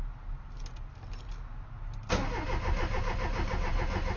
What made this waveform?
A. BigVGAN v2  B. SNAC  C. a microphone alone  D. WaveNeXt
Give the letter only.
C